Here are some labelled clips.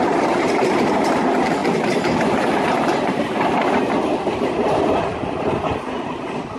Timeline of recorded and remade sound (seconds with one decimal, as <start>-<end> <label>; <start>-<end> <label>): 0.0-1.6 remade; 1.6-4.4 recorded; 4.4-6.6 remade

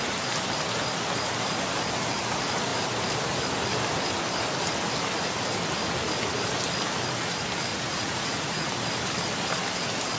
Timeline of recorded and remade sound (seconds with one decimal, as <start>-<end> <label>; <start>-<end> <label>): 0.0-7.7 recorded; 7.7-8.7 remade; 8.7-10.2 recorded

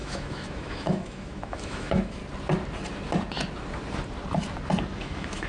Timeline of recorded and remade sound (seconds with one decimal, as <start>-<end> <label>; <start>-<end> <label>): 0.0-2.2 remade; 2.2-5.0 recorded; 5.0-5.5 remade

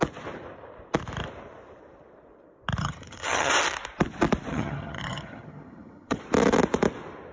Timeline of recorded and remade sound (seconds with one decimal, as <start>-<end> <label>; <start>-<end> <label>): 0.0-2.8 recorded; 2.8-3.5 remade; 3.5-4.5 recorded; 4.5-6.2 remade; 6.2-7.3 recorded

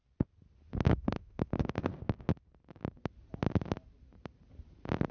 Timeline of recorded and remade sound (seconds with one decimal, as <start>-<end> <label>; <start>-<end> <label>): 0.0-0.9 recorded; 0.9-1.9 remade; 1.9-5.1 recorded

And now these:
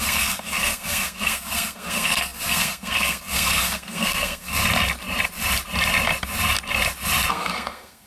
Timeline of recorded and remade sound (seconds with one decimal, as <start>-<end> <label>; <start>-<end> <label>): 0.0-4.6 remade; 4.6-7.3 recorded; 7.3-8.1 remade